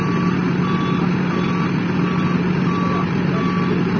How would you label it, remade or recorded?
recorded